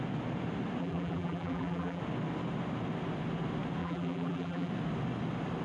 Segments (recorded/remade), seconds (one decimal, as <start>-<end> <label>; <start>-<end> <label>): 0.0-0.8 recorded; 0.8-2.0 remade; 2.0-3.8 recorded; 3.8-4.7 remade; 4.7-5.6 recorded